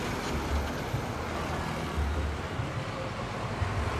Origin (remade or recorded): recorded